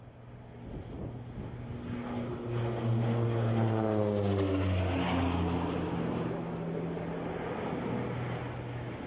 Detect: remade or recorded recorded